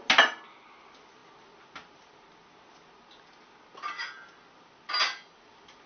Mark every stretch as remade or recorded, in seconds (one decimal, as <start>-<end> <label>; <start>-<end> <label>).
0.0-5.9 recorded

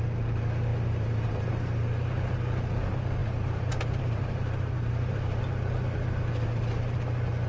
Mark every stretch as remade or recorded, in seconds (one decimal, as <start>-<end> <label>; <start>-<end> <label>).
0.0-0.7 recorded; 0.7-1.5 remade; 1.5-3.2 recorded; 3.2-5.4 remade; 5.4-7.5 recorded

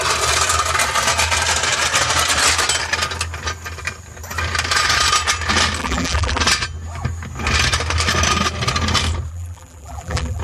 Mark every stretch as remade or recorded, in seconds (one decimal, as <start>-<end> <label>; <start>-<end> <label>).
0.0-5.8 recorded; 5.8-6.4 remade; 6.4-9.3 recorded; 9.3-10.4 remade

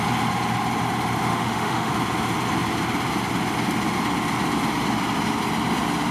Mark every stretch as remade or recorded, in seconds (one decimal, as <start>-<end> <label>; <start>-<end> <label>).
0.0-1.3 recorded; 1.3-1.9 remade; 1.9-6.1 recorded

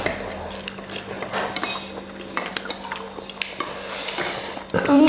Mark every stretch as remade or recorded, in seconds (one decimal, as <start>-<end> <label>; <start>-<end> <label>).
0.0-5.1 recorded

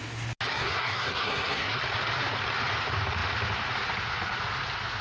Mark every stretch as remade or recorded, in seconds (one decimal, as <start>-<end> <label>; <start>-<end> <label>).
0.0-0.5 recorded; 0.5-1.8 remade; 1.8-5.0 recorded